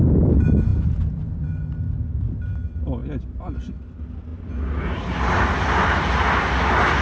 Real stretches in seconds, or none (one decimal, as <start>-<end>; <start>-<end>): 0.0-7.0